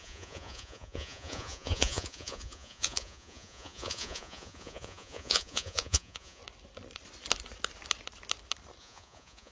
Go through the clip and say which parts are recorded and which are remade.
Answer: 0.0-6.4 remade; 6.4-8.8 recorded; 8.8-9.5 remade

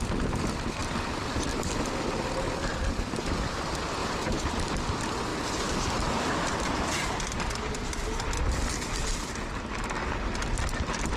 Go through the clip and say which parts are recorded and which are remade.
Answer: 0.0-4.0 recorded; 4.0-4.5 remade; 4.5-11.2 recorded

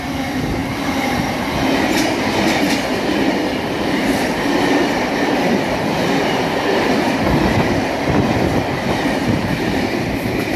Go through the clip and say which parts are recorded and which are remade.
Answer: 0.0-10.6 remade

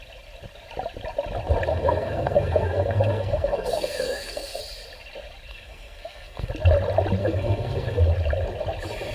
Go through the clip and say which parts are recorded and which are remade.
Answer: 0.0-1.7 recorded; 1.7-4.6 remade; 4.6-5.5 recorded; 5.5-6.5 remade; 6.5-7.2 recorded; 7.2-8.0 remade; 8.0-9.1 recorded

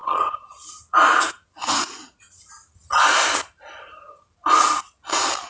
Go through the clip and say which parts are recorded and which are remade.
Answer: 0.0-2.4 remade; 2.4-5.5 recorded

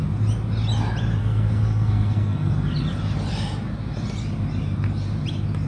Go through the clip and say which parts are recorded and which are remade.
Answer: 0.0-1.2 recorded; 1.2-2.5 remade; 2.5-5.7 recorded

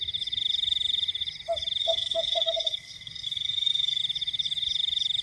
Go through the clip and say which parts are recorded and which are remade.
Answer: 0.0-1.8 recorded; 1.8-4.0 remade; 4.0-5.2 recorded